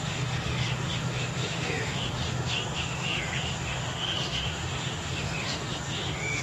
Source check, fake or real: fake